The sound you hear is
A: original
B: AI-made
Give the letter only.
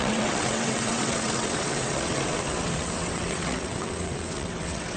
B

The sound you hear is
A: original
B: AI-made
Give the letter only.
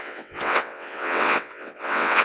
B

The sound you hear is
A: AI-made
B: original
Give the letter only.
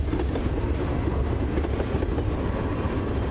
B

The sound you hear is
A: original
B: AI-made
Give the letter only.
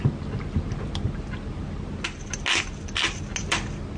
A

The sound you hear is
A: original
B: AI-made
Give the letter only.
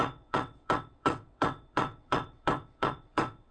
B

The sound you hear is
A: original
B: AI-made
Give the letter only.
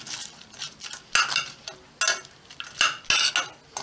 A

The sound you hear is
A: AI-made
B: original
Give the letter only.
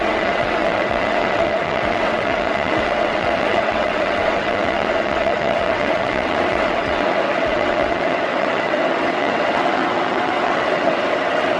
A